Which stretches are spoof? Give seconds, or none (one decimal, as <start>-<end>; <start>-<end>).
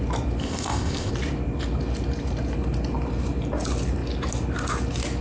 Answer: 0.4-1.1